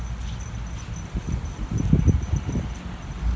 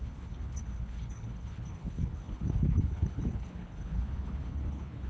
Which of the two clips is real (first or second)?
first